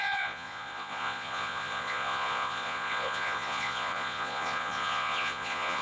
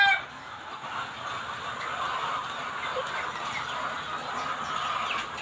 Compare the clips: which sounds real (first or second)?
second